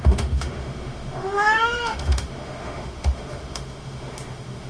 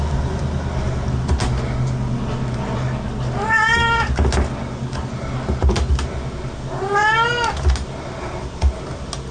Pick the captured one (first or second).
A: second